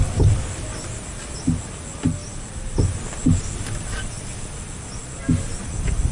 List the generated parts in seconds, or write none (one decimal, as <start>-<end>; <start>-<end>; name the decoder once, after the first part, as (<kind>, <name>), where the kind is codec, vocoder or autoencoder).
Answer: none